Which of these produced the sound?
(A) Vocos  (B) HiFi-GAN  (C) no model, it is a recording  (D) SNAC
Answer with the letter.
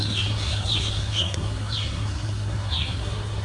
D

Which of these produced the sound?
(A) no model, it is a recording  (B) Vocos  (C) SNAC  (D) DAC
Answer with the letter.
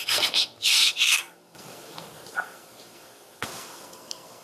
C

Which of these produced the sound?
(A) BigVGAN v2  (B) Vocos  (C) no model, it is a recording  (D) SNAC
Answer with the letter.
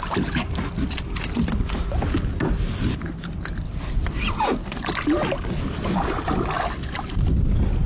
C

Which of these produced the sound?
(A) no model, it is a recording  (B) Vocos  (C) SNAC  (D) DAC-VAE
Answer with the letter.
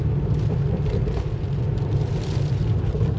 A